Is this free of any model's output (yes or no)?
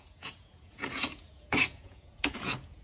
no